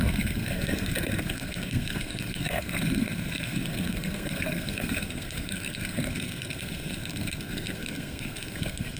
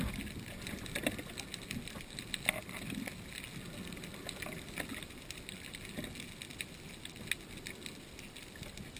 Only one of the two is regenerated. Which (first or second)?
first